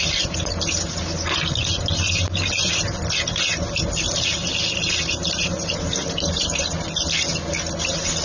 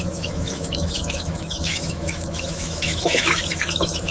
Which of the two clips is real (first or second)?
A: first